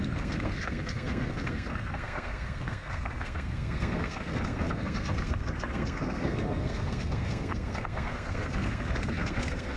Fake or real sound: fake